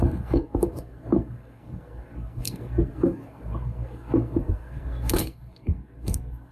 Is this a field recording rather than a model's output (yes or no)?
no